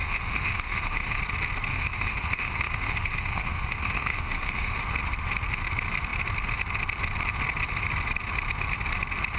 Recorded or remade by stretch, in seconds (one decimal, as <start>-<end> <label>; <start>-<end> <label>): 0.0-1.2 remade; 1.2-1.7 recorded; 1.7-4.8 remade; 4.8-9.4 recorded